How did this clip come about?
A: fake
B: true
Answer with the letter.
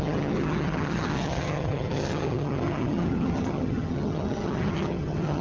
A